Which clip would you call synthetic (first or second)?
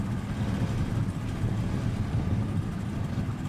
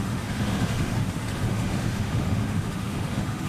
second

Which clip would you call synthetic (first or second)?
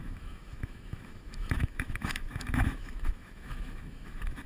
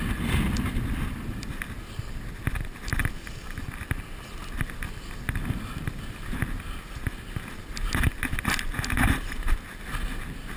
first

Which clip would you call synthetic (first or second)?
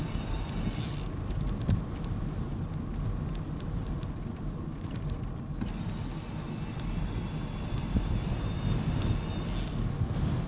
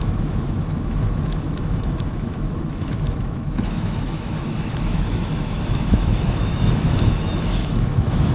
second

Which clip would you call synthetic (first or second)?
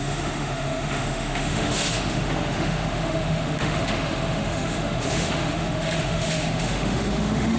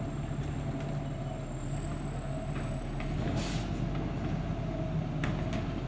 first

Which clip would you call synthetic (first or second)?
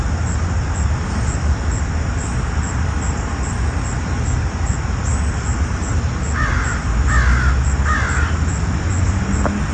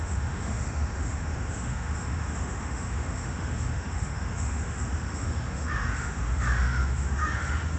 second